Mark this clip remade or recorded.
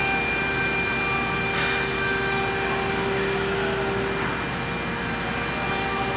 recorded